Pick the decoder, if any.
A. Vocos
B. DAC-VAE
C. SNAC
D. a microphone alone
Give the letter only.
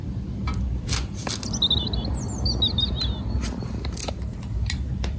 D